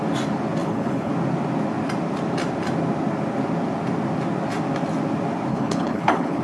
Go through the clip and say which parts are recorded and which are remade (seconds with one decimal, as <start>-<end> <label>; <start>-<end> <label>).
0.0-0.6 recorded; 0.6-1.1 remade; 1.1-5.5 recorded; 5.5-6.4 remade